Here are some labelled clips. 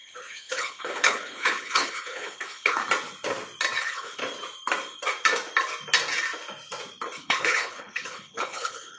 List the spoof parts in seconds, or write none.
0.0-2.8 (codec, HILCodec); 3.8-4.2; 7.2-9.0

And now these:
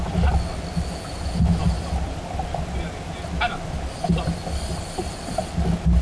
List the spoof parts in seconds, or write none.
none

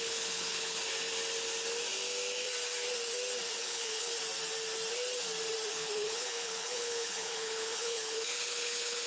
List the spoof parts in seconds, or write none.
0.0-0.8 (codec, HILCodec); 3.6-4.1; 5.7-9.1

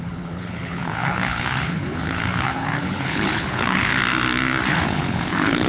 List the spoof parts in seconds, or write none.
0.0-3.9 (codec, HILCodec); 4.7-5.7

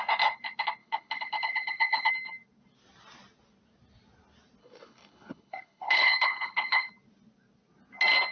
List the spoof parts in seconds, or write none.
0.8-2.1 (codec, HILCodec); 4.6-6.9

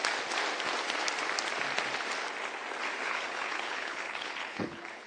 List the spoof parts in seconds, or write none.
3.0-5.1 (codec, HILCodec)

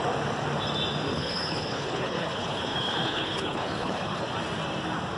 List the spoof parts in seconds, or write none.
1.1-4.2 (codec, HILCodec)